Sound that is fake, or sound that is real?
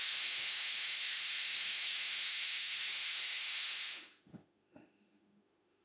fake